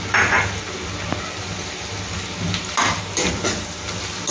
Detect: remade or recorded recorded